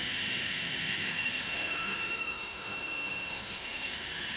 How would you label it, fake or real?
fake